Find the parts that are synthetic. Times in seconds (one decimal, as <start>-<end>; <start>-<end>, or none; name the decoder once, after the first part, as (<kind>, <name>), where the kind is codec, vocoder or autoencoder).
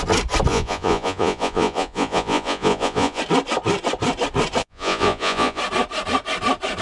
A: 0.5-3.2 (vocoder, Vocos); 4.6-5.6